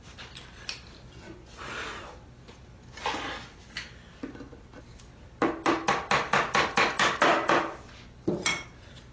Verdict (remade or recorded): recorded